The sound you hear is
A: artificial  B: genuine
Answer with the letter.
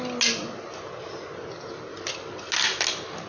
B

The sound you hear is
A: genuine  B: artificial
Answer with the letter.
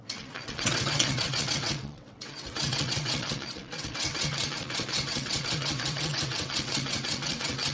B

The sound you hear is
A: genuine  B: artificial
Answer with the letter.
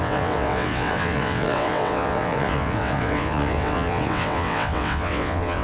B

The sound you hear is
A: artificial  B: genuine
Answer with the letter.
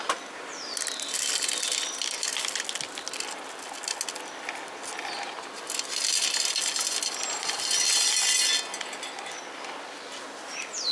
B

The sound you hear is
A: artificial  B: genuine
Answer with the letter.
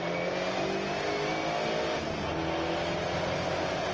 B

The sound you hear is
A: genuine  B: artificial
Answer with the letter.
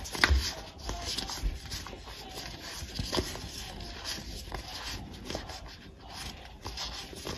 A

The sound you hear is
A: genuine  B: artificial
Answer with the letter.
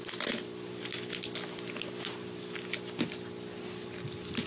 A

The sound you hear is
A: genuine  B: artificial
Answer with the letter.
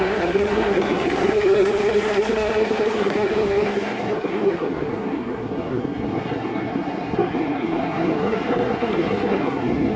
B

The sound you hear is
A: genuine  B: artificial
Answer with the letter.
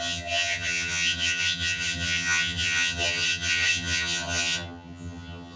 B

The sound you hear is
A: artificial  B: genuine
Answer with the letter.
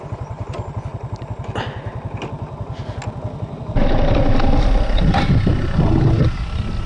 B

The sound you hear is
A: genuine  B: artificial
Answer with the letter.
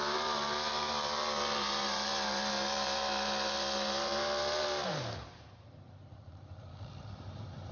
B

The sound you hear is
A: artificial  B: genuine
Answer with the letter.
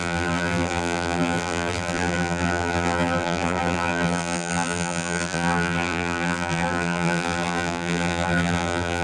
A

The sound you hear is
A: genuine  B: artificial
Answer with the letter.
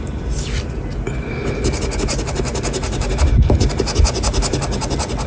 A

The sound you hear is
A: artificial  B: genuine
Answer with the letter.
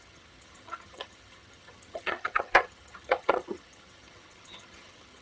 A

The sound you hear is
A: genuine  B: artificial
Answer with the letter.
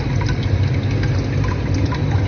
A